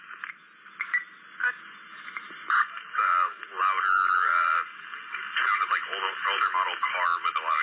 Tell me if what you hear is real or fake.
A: real